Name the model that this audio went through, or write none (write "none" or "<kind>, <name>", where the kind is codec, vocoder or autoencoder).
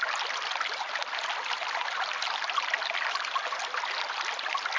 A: none